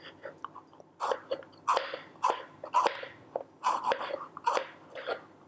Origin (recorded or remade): recorded